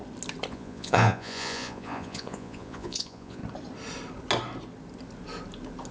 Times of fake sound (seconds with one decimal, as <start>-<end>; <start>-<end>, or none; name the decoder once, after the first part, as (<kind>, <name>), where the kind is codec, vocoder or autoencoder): 0.5-3.4 (vocoder, Vocos)